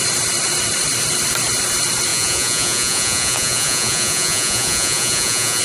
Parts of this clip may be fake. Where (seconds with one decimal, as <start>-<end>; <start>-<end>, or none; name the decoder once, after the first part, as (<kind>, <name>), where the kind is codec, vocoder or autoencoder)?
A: 2.1-5.6 (vocoder, Vocos)